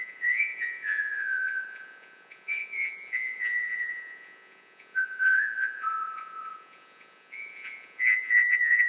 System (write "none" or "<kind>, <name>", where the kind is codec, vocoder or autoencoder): vocoder, Vocos